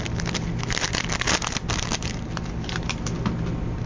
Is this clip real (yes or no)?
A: yes